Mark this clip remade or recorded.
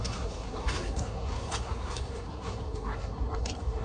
remade